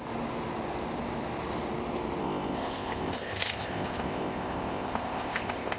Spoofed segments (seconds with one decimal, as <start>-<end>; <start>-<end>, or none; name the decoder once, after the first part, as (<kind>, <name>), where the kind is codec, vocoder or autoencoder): 2.2-5.8 (codec, ZipCodec)